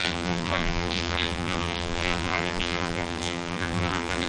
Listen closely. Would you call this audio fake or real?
fake